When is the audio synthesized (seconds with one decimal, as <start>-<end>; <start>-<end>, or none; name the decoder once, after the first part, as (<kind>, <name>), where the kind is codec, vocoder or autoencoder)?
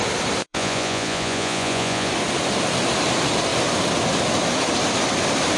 0.4-2.1 (vocoder, Vocos)